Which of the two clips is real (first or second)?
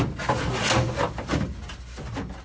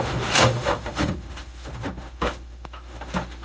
first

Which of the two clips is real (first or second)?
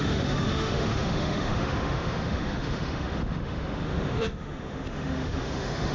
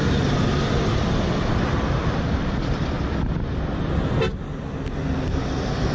second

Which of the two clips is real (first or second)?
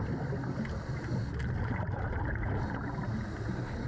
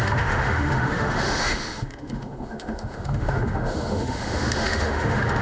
first